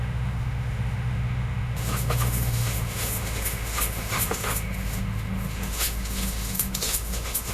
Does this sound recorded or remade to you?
remade